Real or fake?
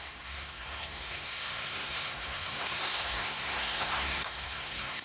fake